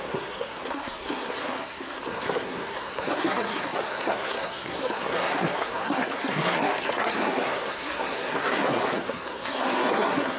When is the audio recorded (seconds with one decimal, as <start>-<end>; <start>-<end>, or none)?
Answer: none